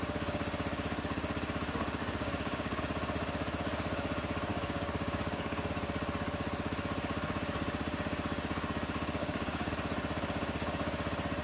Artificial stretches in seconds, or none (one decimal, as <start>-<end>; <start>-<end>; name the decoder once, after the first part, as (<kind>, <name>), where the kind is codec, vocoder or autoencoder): 2.0-2.8 (codec, DAC); 4.5-5.7; 9.2-9.7